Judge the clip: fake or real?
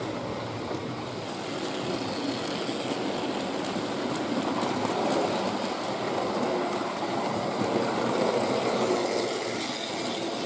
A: real